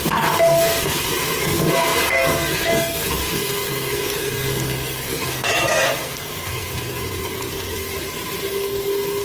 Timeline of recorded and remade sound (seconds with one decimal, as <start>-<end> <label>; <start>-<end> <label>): 0.0-7.9 remade; 7.9-8.5 recorded; 8.5-9.2 remade